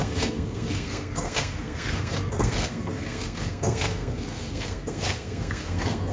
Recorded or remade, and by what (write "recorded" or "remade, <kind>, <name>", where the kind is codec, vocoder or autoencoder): remade, codec, SNAC